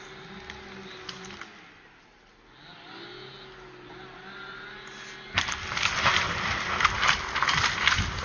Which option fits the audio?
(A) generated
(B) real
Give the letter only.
B